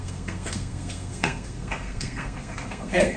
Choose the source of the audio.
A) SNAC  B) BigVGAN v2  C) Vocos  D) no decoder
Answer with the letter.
A